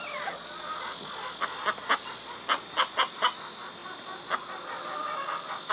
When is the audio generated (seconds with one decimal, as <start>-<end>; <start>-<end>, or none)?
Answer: none